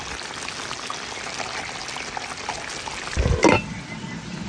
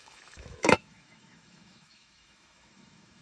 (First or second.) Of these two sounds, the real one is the first